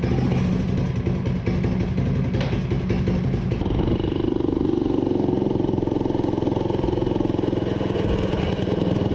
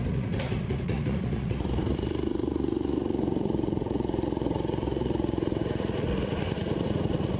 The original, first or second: first